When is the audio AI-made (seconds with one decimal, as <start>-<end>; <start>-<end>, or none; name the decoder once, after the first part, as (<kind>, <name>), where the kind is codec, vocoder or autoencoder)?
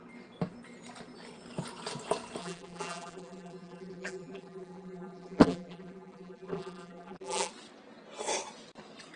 2.4-7.5 (vocoder, BigVGAN v2)